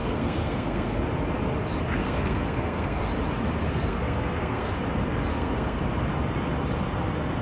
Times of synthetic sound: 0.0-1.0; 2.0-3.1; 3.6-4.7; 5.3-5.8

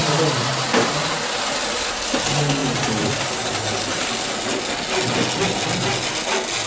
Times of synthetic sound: 0.0-1.2; 2.6-3.1

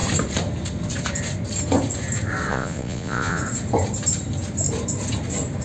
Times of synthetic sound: 2.5-3.4